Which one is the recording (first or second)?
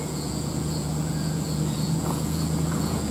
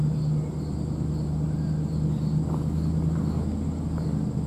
second